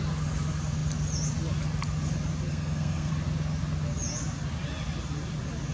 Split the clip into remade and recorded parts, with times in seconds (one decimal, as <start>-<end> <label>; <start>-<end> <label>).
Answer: 0.0-2.5 recorded; 2.5-3.1 remade; 3.1-5.7 recorded